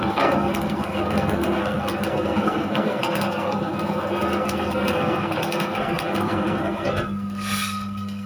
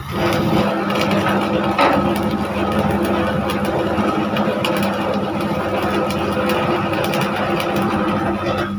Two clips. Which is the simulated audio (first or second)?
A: first